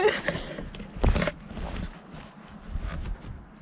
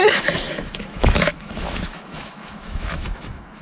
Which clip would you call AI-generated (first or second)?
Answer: second